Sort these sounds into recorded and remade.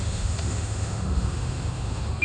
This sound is remade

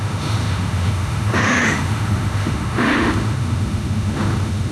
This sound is remade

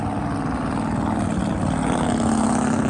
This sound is recorded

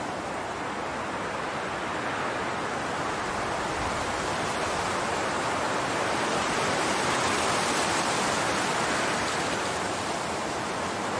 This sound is recorded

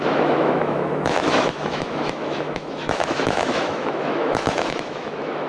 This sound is remade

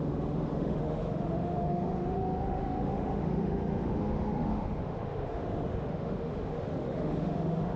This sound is remade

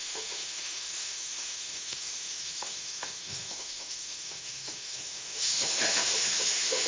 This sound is remade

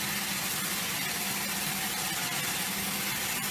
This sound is recorded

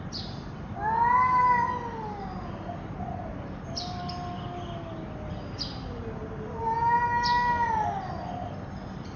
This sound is recorded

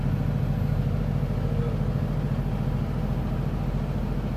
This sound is recorded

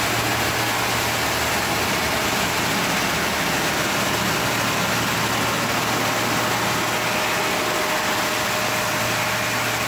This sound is recorded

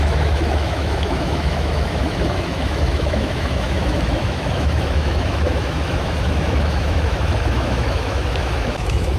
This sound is remade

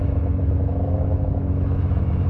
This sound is remade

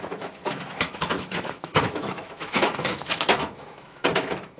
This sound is remade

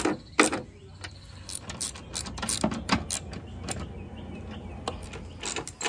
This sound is recorded